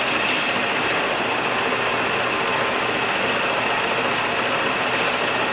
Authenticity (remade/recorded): recorded